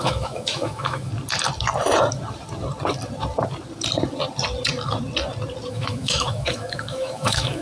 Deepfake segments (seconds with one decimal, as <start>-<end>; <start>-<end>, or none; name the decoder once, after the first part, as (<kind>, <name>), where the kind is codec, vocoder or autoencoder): 0.0-1.1 (autoencoder, DAC-VAE); 5.7-7.6